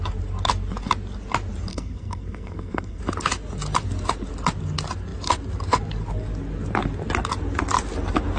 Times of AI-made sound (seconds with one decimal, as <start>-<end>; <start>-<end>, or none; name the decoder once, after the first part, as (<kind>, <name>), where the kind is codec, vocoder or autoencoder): 1.7-3.0 (codec, SNAC)